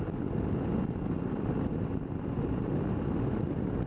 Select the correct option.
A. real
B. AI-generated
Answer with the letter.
A